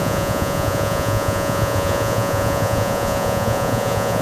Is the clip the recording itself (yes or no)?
no